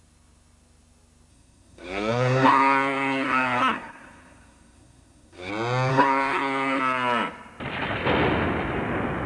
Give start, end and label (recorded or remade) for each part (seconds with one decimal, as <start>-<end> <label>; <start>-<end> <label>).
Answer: 0.0-1.3 recorded; 1.3-5.5 remade; 5.5-5.9 recorded; 5.9-6.8 remade; 6.8-9.3 recorded

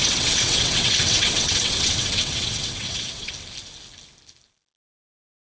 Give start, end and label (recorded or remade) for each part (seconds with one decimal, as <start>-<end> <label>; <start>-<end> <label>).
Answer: 0.0-3.3 remade; 3.3-5.5 recorded

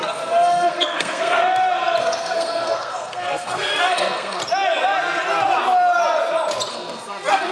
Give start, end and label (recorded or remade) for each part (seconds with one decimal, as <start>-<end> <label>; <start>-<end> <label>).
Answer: 0.0-1.4 remade; 1.4-2.0 recorded; 2.0-4.4 remade; 4.4-6.7 recorded; 6.7-7.5 remade